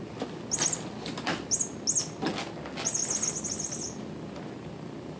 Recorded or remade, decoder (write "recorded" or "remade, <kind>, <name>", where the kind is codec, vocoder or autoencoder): recorded